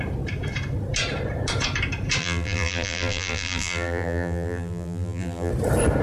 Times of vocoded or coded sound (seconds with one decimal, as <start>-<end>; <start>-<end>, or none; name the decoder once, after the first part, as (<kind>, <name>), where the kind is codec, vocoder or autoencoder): 2.2-5.5 (vocoder, BigVGAN v2)